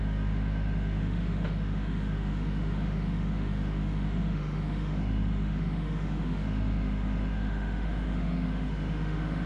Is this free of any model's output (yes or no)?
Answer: no